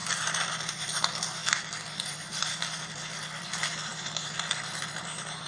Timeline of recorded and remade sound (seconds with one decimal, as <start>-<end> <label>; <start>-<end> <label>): 0.0-5.5 remade